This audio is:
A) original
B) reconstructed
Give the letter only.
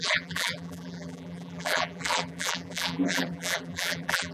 B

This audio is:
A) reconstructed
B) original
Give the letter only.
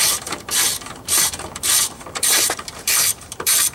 A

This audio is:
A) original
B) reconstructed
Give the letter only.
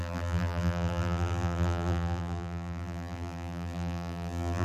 B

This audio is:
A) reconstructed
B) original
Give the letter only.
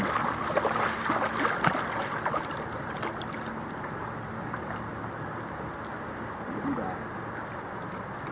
B